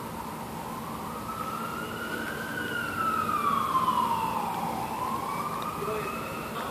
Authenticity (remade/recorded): recorded